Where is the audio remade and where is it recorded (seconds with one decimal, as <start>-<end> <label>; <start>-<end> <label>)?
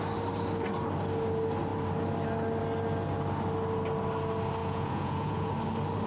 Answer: 0.0-4.6 recorded; 4.6-5.5 remade; 5.5-6.1 recorded